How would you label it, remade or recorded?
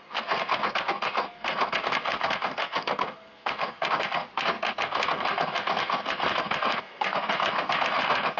remade